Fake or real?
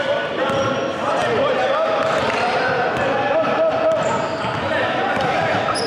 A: real